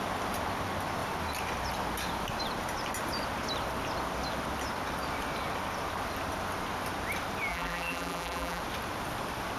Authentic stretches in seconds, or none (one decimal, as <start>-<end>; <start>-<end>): 0.0-7.5; 8.6-9.6